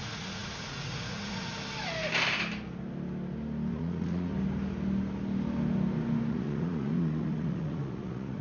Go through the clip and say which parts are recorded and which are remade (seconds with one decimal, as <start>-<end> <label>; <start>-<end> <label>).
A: 0.0-1.5 remade; 1.5-3.7 recorded; 3.7-4.3 remade; 4.3-6.3 recorded; 6.3-8.4 remade